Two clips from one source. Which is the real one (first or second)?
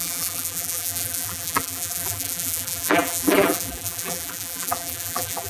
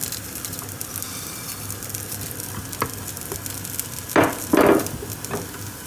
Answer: second